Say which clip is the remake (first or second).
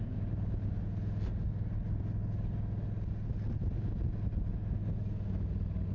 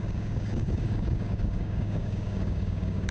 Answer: second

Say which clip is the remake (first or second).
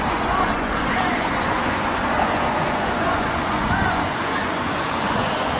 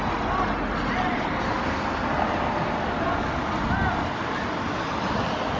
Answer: first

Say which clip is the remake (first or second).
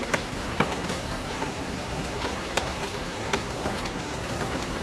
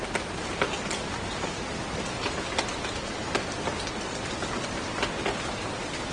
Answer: first